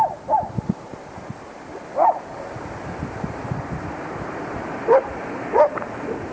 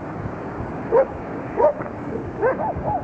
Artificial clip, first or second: second